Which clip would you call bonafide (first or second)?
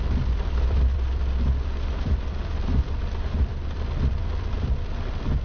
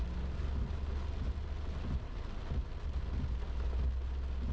second